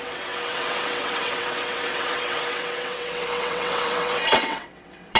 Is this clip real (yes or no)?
no